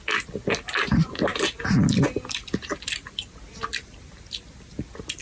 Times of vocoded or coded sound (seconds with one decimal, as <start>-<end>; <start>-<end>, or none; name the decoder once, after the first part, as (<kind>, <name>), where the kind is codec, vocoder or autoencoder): none